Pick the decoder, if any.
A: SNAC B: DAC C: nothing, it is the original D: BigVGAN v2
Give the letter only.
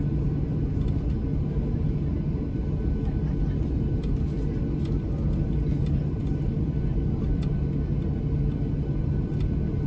C